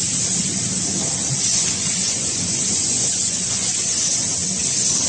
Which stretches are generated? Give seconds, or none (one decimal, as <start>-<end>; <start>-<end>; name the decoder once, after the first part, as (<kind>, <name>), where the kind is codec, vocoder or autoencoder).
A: 1.5-4.6 (vocoder, Vocos)